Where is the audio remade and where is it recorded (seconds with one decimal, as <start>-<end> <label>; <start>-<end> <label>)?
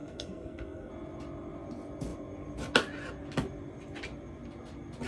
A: 0.0-0.9 remade; 0.9-5.1 recorded